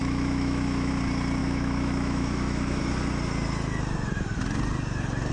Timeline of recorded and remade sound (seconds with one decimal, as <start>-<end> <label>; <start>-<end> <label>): 0.0-0.9 remade; 0.9-1.4 recorded; 1.4-2.8 remade; 2.8-5.3 recorded